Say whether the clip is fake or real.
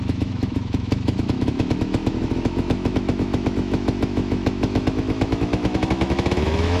fake